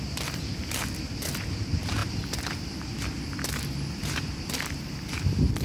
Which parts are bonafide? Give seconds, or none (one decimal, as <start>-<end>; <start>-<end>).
0.0-2.0; 4.8-5.6